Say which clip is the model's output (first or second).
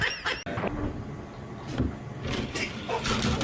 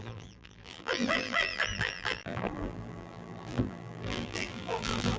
second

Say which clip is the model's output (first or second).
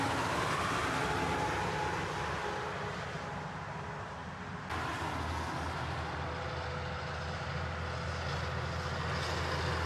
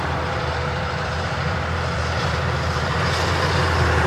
second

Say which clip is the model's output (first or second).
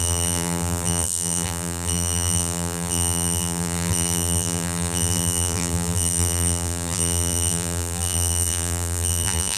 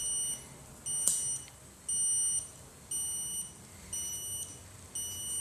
first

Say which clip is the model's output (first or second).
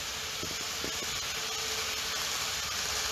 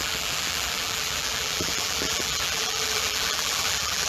second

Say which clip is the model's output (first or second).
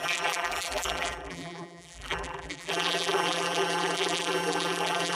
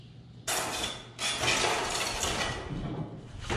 first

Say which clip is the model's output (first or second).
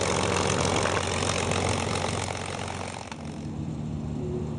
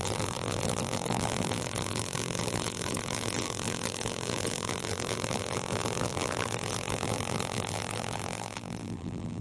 second